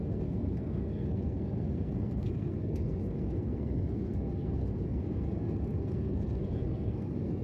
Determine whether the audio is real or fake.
fake